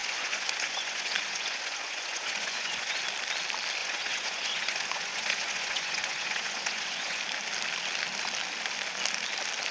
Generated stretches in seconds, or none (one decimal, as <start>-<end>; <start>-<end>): 0.0-3.0; 3.8-7.2